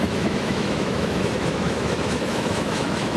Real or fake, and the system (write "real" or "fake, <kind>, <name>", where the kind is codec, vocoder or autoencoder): fake, autoencoder, DAC-VAE